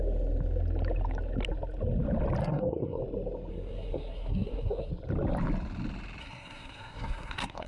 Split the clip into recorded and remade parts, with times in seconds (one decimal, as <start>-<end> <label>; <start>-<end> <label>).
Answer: 0.0-2.4 recorded; 2.4-3.0 remade; 3.0-3.5 recorded; 3.5-4.9 remade; 4.9-6.2 recorded; 6.2-7.7 remade